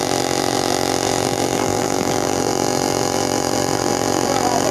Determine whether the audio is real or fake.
fake